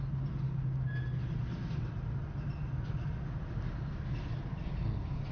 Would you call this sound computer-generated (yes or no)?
no